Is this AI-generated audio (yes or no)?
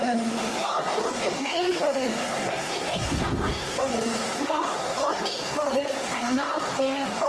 yes